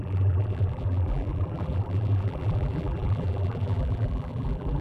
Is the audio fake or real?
fake